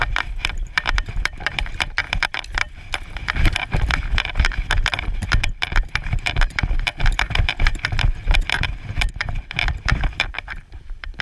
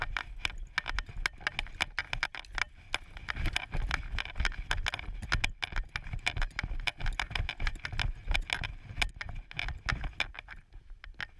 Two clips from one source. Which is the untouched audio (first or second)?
second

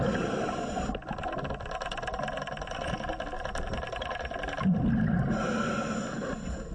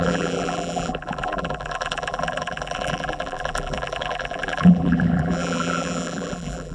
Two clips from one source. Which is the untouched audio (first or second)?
first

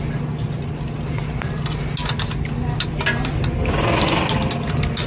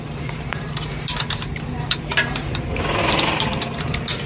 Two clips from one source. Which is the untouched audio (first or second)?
first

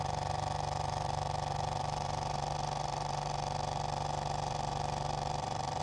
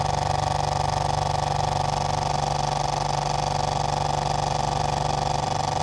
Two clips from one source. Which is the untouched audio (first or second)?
second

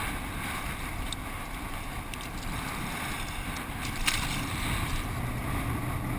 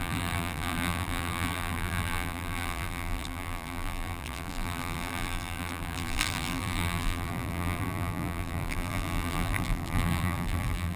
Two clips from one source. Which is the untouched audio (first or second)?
first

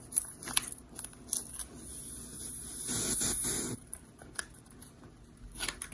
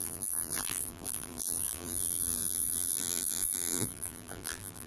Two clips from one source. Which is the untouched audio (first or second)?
first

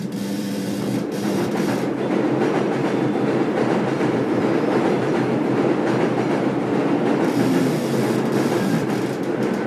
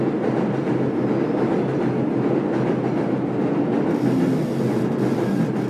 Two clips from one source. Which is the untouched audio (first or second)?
second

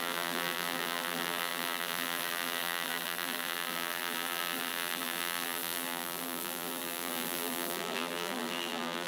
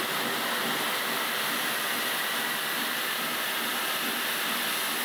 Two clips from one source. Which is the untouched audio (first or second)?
second